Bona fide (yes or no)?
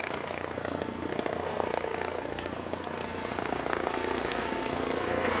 no